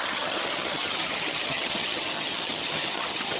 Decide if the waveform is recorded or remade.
remade